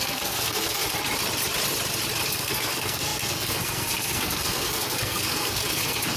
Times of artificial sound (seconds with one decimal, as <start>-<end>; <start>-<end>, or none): 0.0-0.8; 2.3-6.2

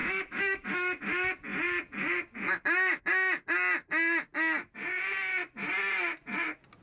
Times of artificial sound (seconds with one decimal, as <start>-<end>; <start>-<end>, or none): 0.0-1.0